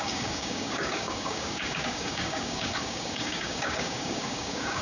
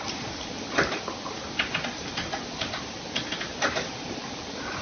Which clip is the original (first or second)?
second